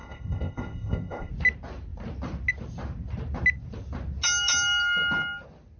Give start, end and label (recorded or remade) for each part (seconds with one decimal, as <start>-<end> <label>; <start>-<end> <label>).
0.0-1.3 remade; 1.3-5.8 recorded